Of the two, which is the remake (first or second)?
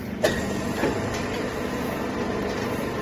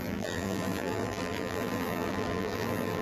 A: second